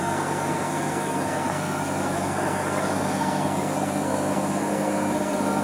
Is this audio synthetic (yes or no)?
yes